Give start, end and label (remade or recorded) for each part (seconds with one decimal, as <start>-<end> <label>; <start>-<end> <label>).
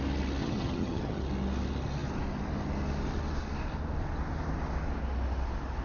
0.0-0.4 recorded; 0.4-1.2 remade; 1.2-5.8 recorded